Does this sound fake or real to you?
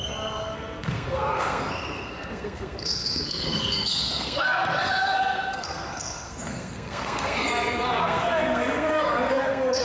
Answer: fake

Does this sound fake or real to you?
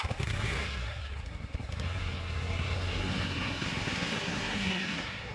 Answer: fake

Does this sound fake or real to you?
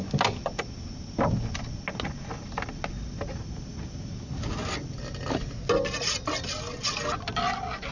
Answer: real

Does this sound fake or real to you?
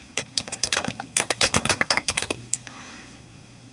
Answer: fake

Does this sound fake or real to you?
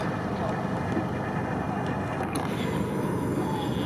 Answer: real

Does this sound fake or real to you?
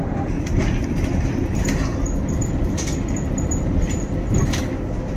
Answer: real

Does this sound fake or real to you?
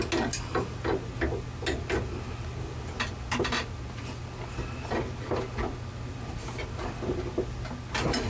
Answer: real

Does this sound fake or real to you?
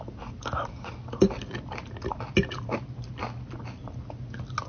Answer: real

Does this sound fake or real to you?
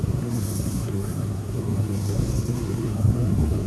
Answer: fake